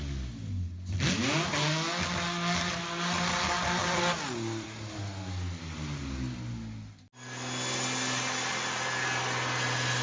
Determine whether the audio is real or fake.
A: real